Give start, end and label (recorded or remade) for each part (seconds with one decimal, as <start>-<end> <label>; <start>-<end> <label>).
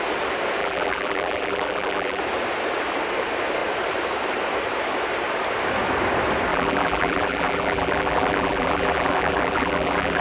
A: 0.0-0.6 recorded; 0.6-2.2 remade; 2.2-6.5 recorded; 6.5-10.2 remade